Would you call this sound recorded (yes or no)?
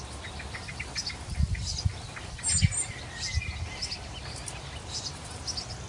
yes